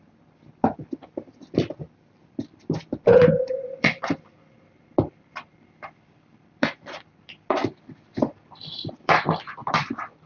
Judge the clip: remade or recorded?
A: remade